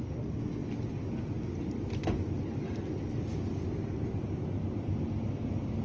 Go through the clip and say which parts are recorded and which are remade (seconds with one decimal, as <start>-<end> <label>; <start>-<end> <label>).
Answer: 0.0-5.8 recorded